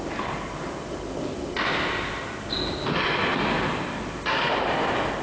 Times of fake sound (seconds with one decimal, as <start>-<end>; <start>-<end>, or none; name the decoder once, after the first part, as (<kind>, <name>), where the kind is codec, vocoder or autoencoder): none

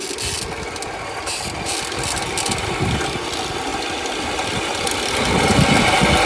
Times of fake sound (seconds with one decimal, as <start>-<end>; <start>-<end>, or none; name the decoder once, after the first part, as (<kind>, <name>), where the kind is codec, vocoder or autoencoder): none

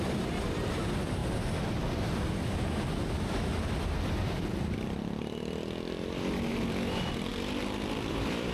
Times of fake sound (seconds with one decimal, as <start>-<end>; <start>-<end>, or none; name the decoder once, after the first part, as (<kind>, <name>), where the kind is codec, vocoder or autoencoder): 0.0-1.2 (vocoder, BigVGAN v2); 5.2-8.5

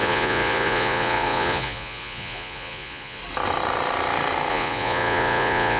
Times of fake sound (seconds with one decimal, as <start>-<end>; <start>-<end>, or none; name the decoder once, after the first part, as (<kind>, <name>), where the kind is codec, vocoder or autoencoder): 0.0-3.2 (vocoder, Vocos); 4.5-5.8

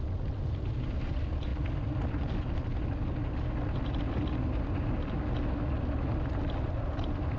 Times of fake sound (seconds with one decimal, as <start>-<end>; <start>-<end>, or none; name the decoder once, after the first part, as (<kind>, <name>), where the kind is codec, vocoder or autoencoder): none

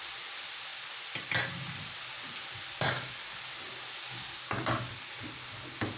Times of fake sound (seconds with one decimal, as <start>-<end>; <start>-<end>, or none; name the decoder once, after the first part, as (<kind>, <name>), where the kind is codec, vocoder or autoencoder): 0.7-2.5 (vocoder, BigVGAN v2)

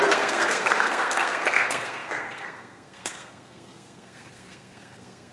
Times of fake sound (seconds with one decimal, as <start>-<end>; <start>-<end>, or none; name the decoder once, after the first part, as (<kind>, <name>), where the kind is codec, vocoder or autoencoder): 0.0-5.3 (codec, SNAC)